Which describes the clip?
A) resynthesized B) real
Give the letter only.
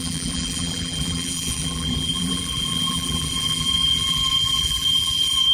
A